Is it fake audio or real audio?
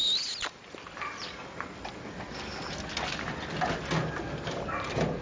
real